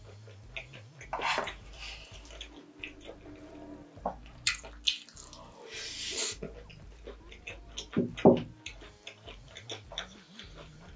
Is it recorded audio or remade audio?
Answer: recorded